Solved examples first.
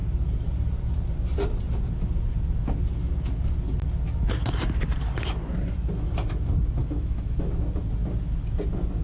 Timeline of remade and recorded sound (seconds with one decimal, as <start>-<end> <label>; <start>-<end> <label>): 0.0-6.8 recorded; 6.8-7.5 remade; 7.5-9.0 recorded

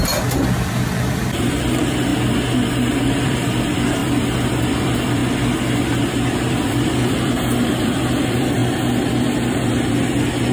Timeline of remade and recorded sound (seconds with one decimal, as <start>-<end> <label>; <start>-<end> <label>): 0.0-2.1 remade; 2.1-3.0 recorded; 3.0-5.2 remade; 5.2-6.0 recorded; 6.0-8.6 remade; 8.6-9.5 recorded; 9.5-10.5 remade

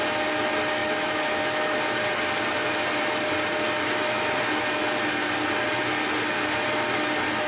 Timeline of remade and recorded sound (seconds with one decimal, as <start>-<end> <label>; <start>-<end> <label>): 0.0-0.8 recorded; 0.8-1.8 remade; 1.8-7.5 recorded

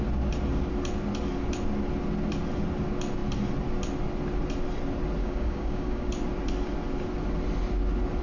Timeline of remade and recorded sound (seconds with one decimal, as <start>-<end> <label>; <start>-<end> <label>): 0.0-5.2 recorded; 5.2-6.1 remade; 6.1-8.2 recorded

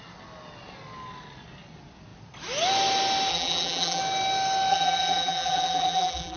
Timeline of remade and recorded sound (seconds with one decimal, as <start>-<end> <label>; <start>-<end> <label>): 0.0-3.3 recorded; 3.3-4.0 remade; 4.0-4.7 recorded; 4.7-6.4 remade

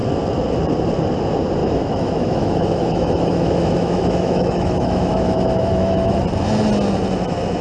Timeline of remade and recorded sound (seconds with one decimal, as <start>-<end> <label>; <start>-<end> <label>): 0.0-1.6 recorded; 1.6-6.2 remade; 6.2-7.6 recorded

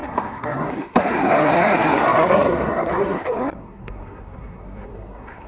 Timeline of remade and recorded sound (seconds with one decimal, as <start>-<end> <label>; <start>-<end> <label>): 0.0-5.5 remade

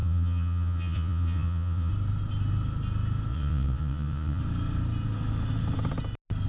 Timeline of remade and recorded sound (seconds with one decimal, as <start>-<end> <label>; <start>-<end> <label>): 0.0-1.9 remade; 1.9-3.3 recorded; 3.3-4.4 remade; 4.4-6.5 recorded